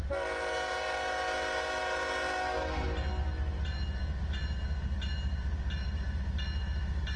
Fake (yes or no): no